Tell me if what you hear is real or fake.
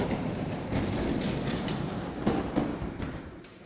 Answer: fake